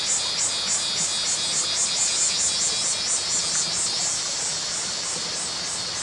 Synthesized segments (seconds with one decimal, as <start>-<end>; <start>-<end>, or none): none